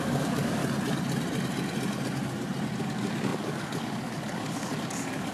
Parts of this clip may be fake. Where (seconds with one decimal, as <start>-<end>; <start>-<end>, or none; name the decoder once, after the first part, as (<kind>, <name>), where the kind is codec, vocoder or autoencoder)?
0.0-0.6 (codec, DAC); 2.8-5.3